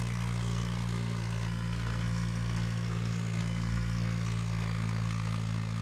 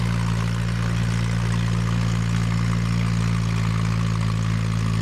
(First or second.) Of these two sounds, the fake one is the first